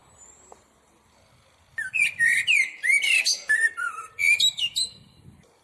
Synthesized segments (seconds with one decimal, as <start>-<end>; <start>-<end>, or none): 0.0-3.2